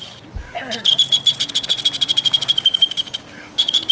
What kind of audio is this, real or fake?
real